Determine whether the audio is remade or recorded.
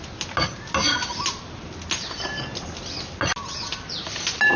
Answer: recorded